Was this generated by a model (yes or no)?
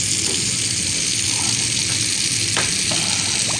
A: no